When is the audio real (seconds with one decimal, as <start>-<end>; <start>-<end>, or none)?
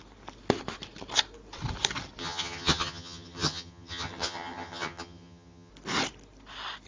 0.0-2.2; 5.7-6.9